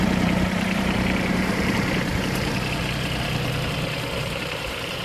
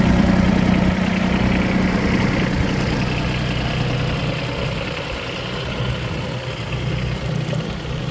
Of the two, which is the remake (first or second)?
first